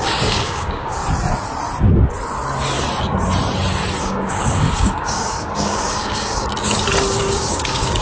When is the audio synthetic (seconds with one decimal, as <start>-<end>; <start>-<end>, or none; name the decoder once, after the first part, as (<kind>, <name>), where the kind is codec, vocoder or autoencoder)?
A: 0.0-1.0 (codec, DAC); 4.0-6.5; 7.2-8.0